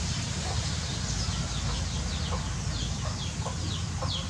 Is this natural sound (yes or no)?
yes